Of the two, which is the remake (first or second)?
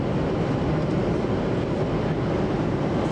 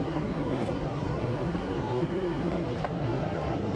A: second